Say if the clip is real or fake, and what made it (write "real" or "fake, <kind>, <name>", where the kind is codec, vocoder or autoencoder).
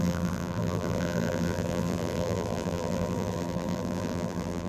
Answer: fake, vocoder, BigVGAN v2